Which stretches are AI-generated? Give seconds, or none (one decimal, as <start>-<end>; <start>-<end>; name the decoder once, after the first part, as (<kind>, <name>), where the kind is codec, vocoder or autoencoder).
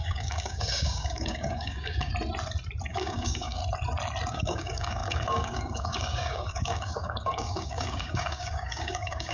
0.0-2.1 (codec, DAC); 2.9-3.6; 4.3-9.3